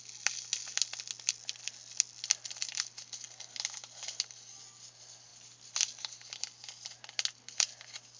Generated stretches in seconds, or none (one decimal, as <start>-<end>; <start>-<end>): none